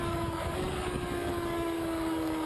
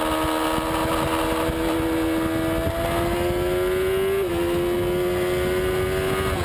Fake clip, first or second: first